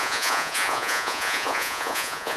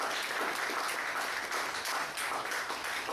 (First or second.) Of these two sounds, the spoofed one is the first